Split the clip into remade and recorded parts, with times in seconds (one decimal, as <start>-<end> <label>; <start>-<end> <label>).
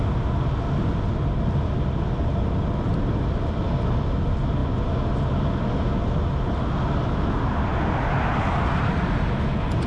0.0-9.9 recorded